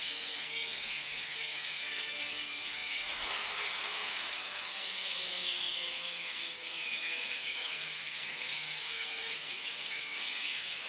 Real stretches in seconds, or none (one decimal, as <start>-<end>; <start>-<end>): none